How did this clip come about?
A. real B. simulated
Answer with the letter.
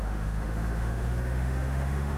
B